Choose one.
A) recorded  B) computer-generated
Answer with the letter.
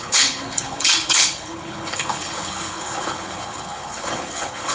B